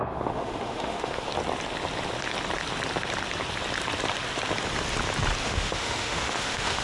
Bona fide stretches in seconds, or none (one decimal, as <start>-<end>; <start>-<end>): 1.3-5.4